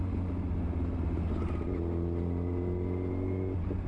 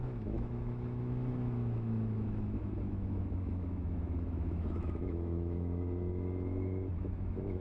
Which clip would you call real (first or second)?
first